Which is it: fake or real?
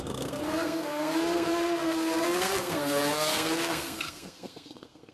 fake